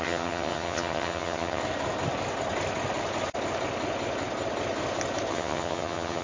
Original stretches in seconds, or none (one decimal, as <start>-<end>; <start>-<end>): 1.6-5.3